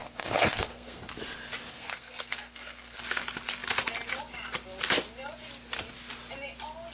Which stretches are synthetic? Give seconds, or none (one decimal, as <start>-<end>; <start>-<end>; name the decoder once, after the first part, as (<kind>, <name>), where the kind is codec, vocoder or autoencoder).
0.0-1.0 (codec, SNAC); 1.7-3.0